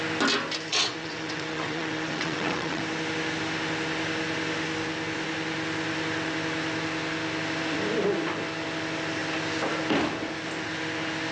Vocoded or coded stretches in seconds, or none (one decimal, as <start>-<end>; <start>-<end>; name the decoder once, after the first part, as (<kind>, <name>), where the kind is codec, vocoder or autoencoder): 0.7-2.8 (vocoder, WaveNeXt)